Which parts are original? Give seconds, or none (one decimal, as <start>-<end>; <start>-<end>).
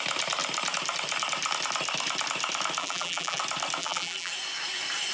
0.0-2.8; 3.4-3.8; 4.3-5.1